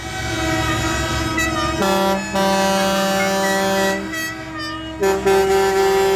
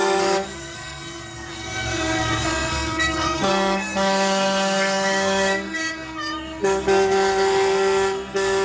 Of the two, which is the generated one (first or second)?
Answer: second